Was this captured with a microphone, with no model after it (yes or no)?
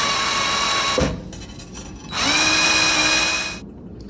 yes